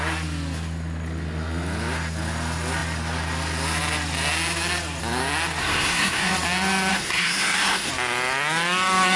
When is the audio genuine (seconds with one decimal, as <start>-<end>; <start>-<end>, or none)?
0.0-5.6; 6.3-6.9; 7.9-9.2